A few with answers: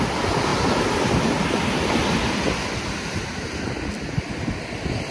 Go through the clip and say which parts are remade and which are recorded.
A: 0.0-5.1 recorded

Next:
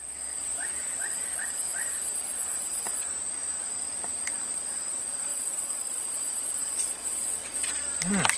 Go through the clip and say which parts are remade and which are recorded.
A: 0.0-5.3 recorded; 5.3-6.0 remade; 6.0-6.6 recorded; 6.6-7.7 remade; 7.7-8.4 recorded

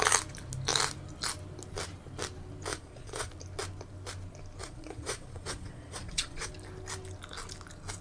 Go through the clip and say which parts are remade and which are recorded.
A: 0.0-2.7 recorded; 2.7-3.3 remade; 3.3-4.6 recorded; 4.6-6.5 remade; 6.5-8.0 recorded

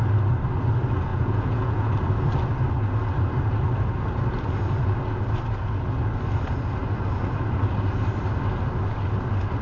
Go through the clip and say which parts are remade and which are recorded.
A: 0.0-1.1 recorded; 1.1-1.9 remade; 1.9-9.6 recorded

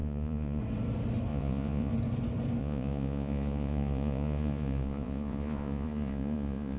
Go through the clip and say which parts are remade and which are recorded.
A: 0.0-0.6 remade; 0.6-1.3 recorded; 1.3-1.9 remade; 1.9-2.6 recorded; 2.6-6.8 remade

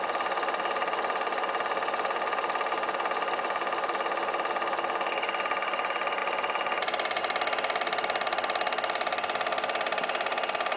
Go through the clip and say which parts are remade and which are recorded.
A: 0.0-10.8 recorded